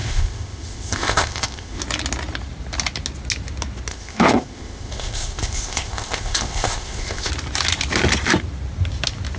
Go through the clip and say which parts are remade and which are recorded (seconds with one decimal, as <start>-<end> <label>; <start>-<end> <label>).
0.0-1.8 remade; 1.8-3.9 recorded; 3.9-7.3 remade; 7.3-9.4 recorded